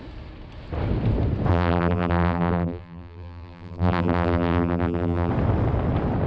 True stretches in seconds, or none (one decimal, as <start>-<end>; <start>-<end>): 0.0-1.5; 5.3-6.3